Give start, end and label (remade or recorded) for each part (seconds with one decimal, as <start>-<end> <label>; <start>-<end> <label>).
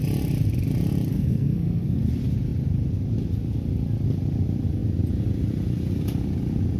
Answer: 0.0-1.1 recorded; 1.1-2.0 remade; 2.0-6.8 recorded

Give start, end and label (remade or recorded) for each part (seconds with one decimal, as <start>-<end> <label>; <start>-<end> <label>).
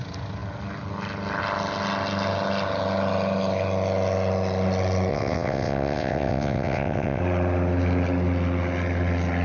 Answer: 0.0-5.1 recorded; 5.1-7.2 remade; 7.2-9.4 recorded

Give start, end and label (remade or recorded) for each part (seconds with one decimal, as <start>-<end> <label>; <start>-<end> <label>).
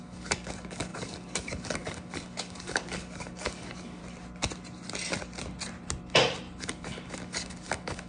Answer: 0.0-4.0 remade; 4.0-6.6 recorded; 6.6-8.1 remade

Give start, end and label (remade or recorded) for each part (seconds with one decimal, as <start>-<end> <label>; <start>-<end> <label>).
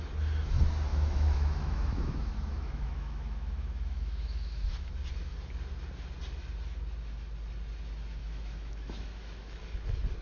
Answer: 0.0-0.9 recorded; 0.9-4.9 remade; 4.9-8.2 recorded; 8.2-9.6 remade; 9.6-10.2 recorded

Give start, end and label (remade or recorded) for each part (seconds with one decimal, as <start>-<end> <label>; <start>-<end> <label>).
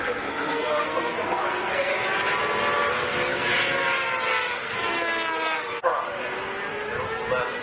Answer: 0.0-1.9 remade; 1.9-2.9 recorded; 2.9-3.5 remade; 3.5-4.4 recorded; 4.4-5.9 remade; 5.9-7.6 recorded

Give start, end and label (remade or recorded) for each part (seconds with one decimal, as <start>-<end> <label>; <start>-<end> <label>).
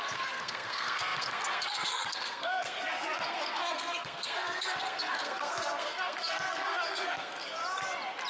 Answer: 0.0-7.6 remade; 7.6-8.3 recorded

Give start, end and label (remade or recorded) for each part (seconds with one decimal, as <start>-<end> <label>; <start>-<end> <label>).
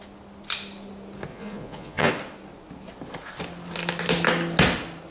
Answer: 0.0-1.3 recorded; 1.3-2.1 remade; 2.1-5.1 recorded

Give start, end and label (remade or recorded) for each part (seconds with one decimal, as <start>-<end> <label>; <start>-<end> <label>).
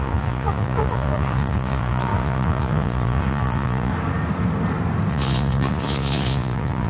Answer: 0.0-3.9 remade; 3.9-5.1 recorded; 5.1-6.9 remade